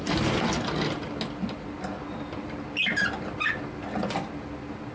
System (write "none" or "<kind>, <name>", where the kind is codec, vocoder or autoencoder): none